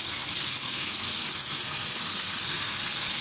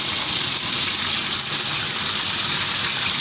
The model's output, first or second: first